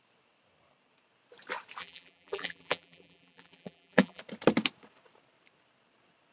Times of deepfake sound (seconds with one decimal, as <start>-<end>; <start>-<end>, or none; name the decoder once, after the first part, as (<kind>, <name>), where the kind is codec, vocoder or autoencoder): 1.8-4.2 (vocoder, BigVGAN v2)